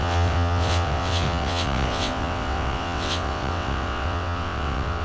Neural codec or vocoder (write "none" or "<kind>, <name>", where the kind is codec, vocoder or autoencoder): vocoder, WaveNeXt